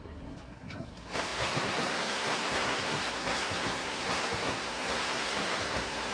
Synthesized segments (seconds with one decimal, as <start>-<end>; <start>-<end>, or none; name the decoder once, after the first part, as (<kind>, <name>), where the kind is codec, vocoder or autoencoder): 0.0-6.1 (codec, SNAC)